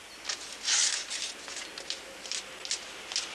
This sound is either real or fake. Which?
real